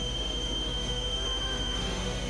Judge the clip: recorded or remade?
remade